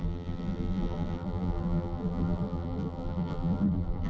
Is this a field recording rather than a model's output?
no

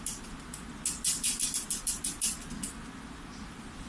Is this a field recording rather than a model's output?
yes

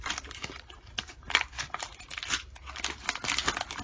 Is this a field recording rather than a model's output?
yes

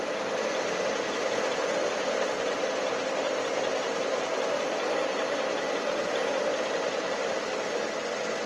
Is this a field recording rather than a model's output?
yes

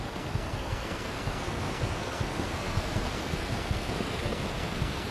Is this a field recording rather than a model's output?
no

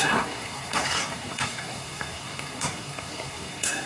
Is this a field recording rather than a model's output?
no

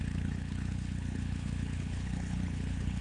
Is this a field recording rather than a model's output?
no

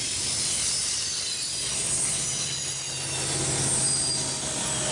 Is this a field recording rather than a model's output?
yes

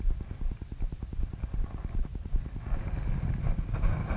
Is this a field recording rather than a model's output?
yes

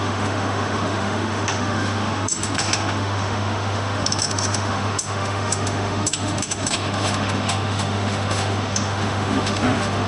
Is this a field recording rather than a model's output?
no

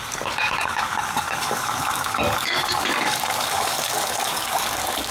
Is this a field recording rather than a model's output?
no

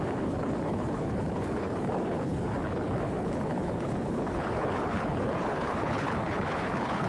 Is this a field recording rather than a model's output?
no